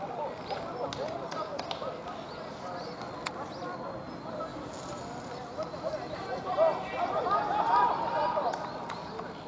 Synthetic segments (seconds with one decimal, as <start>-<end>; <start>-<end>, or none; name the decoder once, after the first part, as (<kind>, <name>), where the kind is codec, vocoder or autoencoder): none